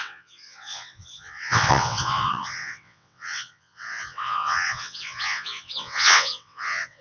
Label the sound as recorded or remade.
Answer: remade